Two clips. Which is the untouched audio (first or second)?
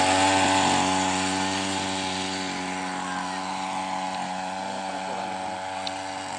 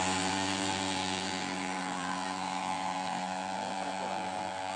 first